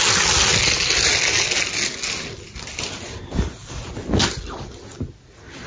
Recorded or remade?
recorded